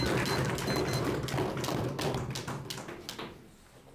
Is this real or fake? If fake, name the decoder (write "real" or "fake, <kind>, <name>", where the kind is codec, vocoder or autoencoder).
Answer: real